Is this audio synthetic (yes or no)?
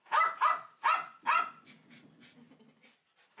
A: no